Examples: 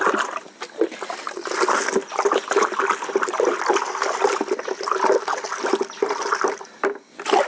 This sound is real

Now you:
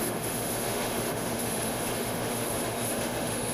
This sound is fake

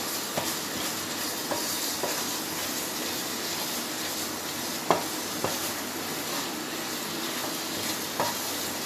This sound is real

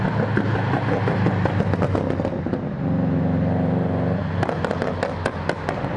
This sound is real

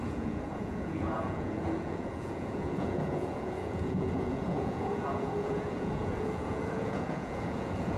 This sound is fake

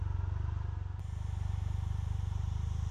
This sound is real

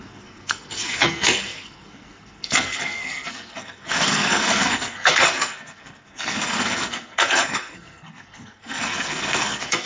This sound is fake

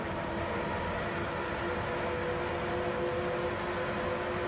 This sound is real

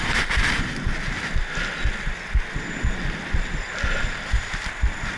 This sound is real